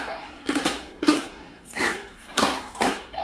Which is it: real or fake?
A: fake